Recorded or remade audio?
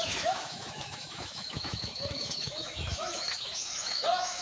remade